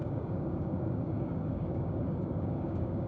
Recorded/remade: remade